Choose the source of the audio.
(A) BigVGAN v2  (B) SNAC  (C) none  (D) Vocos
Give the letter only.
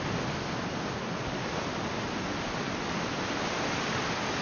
C